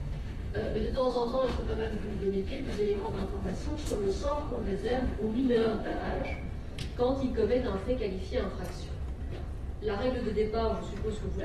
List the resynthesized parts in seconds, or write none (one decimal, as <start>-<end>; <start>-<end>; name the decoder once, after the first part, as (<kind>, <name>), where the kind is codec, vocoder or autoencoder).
0.0-6.2 (autoencoder, DAC-VAE)